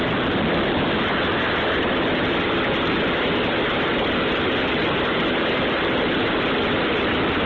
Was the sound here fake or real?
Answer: real